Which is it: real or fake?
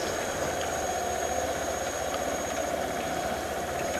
real